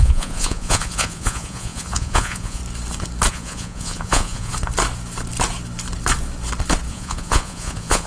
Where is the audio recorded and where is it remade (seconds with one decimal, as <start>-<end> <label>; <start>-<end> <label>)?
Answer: 0.0-2.6 remade; 2.6-3.3 recorded; 3.3-4.5 remade; 4.5-6.9 recorded; 6.9-8.1 remade